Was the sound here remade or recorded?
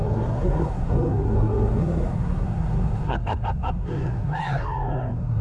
remade